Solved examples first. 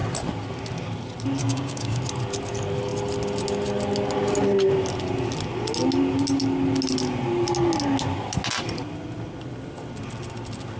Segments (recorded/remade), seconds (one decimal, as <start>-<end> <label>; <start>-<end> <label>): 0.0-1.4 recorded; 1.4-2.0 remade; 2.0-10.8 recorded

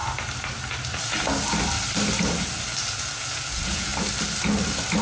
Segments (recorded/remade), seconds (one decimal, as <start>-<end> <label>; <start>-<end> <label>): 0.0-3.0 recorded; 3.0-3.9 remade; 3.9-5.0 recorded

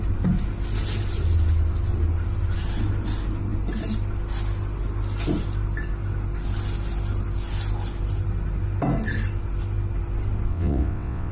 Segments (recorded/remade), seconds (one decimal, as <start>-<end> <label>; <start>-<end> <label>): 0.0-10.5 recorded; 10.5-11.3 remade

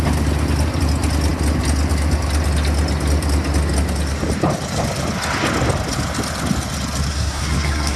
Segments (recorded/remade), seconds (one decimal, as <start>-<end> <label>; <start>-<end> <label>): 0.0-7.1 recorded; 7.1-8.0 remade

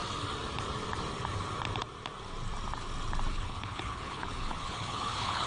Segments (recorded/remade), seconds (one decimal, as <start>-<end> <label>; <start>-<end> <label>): 0.0-3.3 recorded; 3.3-5.5 remade

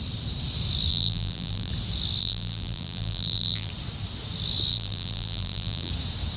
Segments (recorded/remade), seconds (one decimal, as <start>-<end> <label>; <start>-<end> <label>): 0.0-0.9 recorded; 0.9-1.7 remade; 1.7-2.2 recorded; 2.2-3.7 remade; 3.7-4.7 recorded; 4.7-5.9 remade; 5.9-6.4 recorded

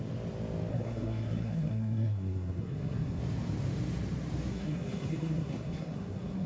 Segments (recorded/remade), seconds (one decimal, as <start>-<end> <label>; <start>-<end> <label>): 0.0-0.7 recorded; 0.7-3.2 remade; 3.2-4.5 recorded; 4.5-6.5 remade